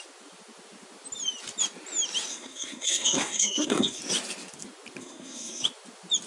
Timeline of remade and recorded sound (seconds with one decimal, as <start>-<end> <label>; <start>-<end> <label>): 0.0-2.3 recorded; 2.3-4.0 remade; 4.0-5.0 recorded; 5.0-5.6 remade; 5.6-6.3 recorded